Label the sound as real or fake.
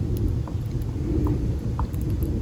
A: real